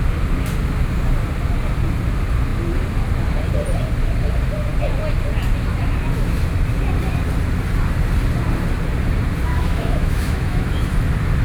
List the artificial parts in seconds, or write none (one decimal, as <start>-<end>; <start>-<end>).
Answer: 9.5-11.0